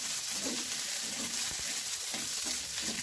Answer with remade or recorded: remade